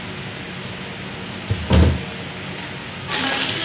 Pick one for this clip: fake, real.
real